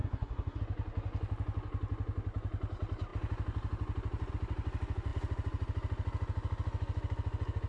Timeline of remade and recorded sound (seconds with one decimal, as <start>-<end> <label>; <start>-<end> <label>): 0.0-0.6 remade; 0.6-7.7 recorded